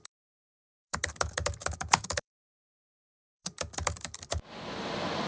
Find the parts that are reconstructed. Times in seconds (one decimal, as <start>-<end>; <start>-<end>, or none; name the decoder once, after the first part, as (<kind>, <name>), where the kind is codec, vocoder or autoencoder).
0.0-5.3 (vocoder, BigVGAN v2)